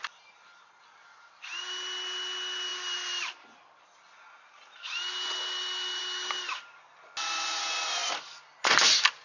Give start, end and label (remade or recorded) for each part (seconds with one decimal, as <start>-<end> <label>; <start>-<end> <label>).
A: 0.0-9.2 recorded